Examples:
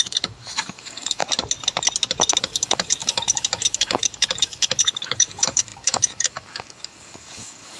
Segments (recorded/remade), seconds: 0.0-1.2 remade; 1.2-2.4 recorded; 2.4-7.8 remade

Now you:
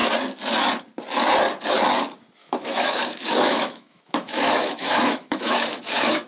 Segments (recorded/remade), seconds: 0.0-2.4 recorded; 2.4-6.3 remade

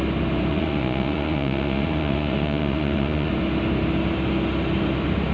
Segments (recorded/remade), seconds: 0.0-0.5 recorded; 0.5-3.3 remade; 3.3-5.3 recorded

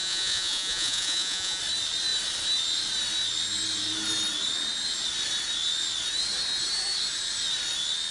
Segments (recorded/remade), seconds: 0.0-1.6 remade; 1.6-8.1 recorded

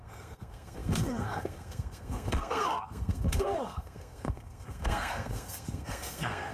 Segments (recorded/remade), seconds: 0.0-6.5 remade

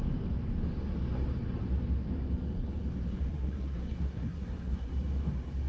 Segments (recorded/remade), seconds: 0.0-3.3 recorded; 3.3-4.9 remade; 4.9-5.7 recorded

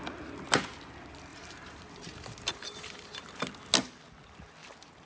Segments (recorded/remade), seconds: 0.0-1.3 recorded; 1.3-3.2 remade; 3.2-4.6 recorded; 4.6-5.1 remade